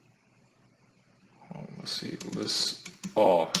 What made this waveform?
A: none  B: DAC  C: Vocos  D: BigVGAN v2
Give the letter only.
A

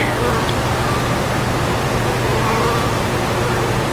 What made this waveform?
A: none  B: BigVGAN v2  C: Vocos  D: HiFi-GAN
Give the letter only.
A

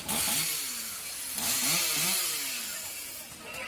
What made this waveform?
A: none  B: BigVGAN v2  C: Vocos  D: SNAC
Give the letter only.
B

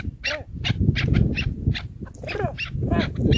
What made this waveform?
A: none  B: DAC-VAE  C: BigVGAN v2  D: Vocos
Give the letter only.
A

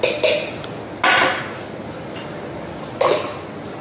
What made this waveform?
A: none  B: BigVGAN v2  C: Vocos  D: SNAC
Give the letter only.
A